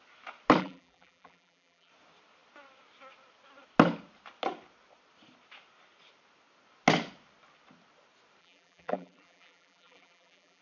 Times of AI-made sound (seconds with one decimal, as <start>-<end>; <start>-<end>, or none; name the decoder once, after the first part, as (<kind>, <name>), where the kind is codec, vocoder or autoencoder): 0.6-1.9 (vocoder, BigVGAN v2); 8.4-10.6